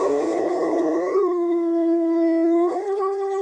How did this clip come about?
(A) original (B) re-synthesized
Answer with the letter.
B